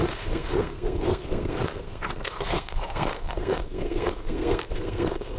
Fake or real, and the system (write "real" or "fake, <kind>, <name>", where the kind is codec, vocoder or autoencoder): fake, codec, SNAC